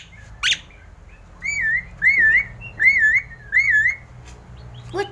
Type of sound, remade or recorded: recorded